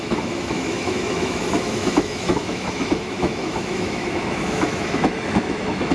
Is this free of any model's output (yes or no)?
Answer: no